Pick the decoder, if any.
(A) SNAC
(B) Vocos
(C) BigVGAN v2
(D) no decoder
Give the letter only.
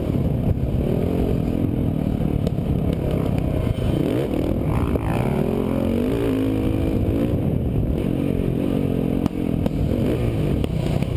D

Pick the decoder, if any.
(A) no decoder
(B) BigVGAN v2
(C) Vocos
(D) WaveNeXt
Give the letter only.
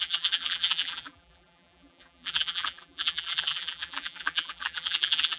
B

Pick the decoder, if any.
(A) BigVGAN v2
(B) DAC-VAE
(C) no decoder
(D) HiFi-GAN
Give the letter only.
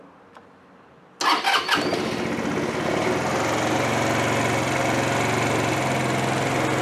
C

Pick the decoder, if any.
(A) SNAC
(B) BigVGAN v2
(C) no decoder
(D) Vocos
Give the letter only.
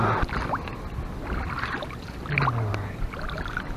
C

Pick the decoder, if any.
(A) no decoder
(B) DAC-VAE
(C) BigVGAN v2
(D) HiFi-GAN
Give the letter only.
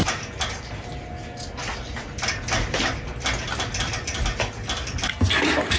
A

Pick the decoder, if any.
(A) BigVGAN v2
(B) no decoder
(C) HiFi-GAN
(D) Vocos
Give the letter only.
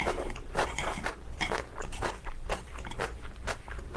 A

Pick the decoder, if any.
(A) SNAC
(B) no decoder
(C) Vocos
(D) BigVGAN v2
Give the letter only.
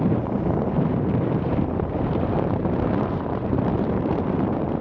D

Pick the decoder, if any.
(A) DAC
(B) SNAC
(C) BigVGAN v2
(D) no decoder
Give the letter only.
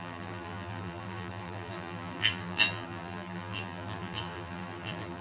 C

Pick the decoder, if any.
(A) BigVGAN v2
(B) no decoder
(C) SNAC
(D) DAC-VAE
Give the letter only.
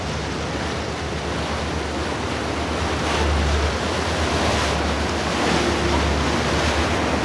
B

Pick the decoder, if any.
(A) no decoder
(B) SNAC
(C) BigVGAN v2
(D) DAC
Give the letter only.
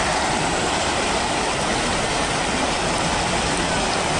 A